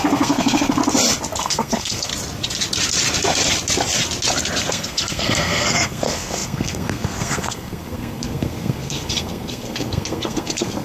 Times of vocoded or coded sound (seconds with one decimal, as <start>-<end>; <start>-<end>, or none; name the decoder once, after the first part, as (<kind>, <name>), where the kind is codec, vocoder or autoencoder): 0.0-0.8 (codec, SNAC); 1.4-2.1; 4.7-10.8